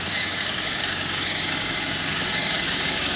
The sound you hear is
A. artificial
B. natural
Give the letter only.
A